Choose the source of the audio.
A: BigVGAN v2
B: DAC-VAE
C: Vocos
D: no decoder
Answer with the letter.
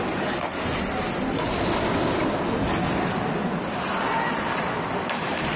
D